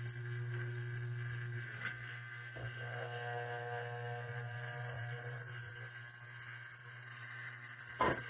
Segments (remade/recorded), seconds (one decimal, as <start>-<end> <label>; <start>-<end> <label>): 0.0-4.3 recorded; 4.3-5.7 remade; 5.7-6.8 recorded; 6.8-7.8 remade; 7.8-8.3 recorded